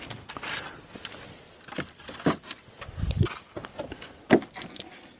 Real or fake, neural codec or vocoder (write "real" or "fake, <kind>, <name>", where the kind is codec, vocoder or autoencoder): real